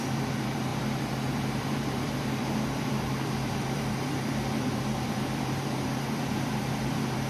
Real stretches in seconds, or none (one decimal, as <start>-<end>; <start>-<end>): none